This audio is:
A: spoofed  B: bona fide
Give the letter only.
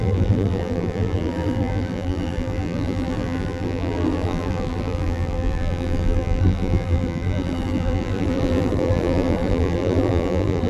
A